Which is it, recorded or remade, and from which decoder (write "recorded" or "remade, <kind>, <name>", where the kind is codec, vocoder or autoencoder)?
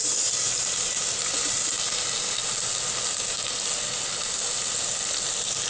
recorded